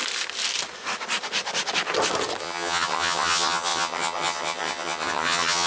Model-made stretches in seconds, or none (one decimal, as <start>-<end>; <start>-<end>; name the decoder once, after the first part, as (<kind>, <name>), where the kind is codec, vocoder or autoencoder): 2.4-5.7 (vocoder, HiFi-GAN)